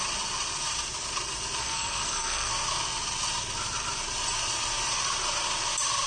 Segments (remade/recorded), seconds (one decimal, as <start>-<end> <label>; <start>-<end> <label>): 0.0-1.6 recorded; 1.6-2.5 remade; 2.5-6.1 recorded